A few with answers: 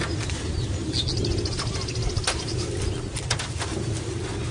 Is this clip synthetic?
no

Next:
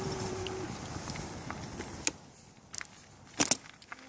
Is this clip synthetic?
no